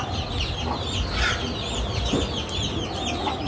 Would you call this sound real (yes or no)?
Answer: yes